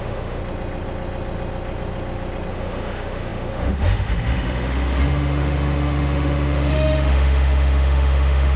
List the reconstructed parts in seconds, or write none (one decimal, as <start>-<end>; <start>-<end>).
0.0-0.4; 2.5-8.6